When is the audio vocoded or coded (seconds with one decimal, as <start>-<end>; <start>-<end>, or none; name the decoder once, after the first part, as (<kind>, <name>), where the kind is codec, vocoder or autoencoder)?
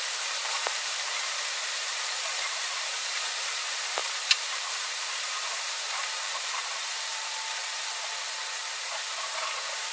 0.0-7.9 (vocoder, BigVGAN v2); 8.7-9.9